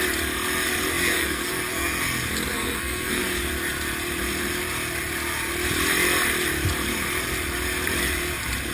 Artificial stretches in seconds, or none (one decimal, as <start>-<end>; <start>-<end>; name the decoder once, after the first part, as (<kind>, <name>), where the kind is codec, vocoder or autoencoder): 0.9-2.0 (codec, SNAC); 2.5-3.2